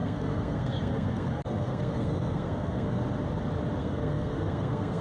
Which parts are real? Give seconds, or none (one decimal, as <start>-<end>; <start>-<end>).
3.0-3.8